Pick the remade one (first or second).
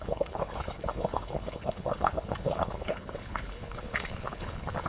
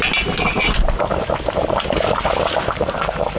first